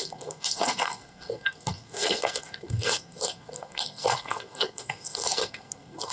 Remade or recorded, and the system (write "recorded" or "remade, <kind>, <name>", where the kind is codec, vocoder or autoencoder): remade, codec, SNAC